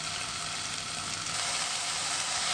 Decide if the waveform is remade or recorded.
recorded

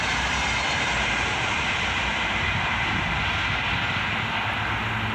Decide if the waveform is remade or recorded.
recorded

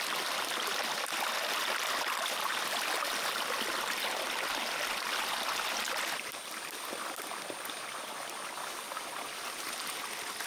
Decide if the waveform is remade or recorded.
recorded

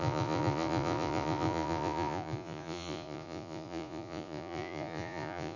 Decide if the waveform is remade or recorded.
remade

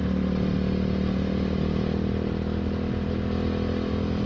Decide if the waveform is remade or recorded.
recorded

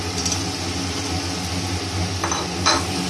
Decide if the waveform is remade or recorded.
recorded